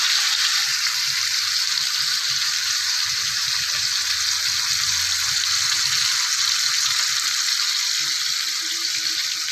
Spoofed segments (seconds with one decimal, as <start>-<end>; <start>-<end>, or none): 0.7-3.5

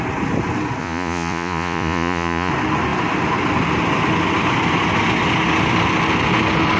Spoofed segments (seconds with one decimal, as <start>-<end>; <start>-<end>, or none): 0.8-2.5

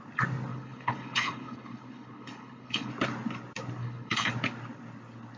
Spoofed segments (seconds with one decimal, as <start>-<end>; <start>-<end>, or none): 0.5-2.9; 3.8-4.3

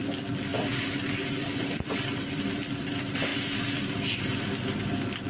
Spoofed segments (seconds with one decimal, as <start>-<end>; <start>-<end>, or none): 0.5-2.9

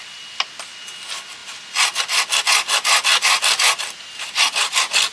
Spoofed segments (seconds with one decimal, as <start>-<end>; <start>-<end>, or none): none

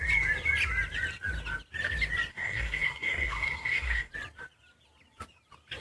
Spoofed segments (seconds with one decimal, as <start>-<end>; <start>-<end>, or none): 2.3-4.1

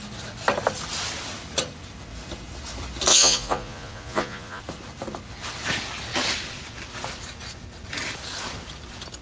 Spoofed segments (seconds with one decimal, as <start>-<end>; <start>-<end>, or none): 3.1-4.6

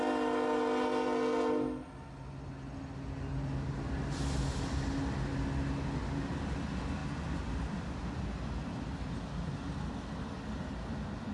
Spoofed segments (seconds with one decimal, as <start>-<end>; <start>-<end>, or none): 7.0-8.2